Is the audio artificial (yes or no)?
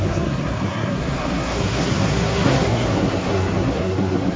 yes